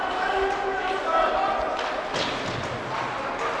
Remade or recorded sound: recorded